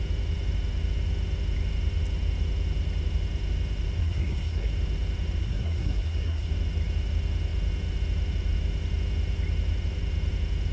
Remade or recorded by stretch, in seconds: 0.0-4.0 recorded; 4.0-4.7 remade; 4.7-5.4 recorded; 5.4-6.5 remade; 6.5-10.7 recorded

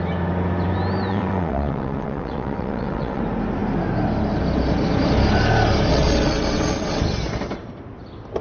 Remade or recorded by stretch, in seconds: 0.0-1.1 recorded; 1.1-3.2 remade; 3.2-5.9 recorded; 5.9-7.0 remade; 7.0-8.4 recorded

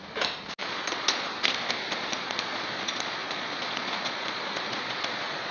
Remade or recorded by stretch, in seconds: 0.0-0.6 recorded; 0.6-1.3 remade; 1.3-2.1 recorded; 2.1-5.5 remade

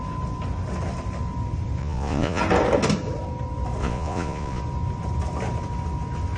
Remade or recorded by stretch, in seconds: 0.0-1.8 recorded; 1.8-2.4 remade; 2.4-3.8 recorded; 3.8-4.6 remade; 4.6-6.4 recorded

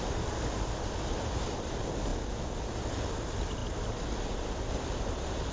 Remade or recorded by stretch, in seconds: 0.0-5.5 recorded

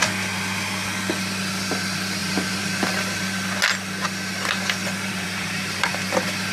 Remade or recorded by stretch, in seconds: 0.0-2.2 recorded; 2.2-2.9 remade; 2.9-4.8 recorded; 4.8-5.9 remade; 5.9-6.5 recorded

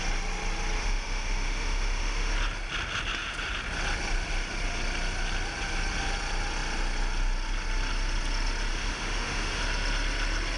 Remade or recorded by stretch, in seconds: 0.0-0.8 recorded; 0.8-2.3 remade; 2.3-8.7 recorded; 8.7-9.6 remade; 9.6-10.6 recorded

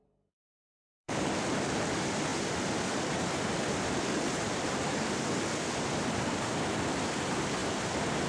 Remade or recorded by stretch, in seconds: 0.0-1.3 remade; 1.3-8.3 recorded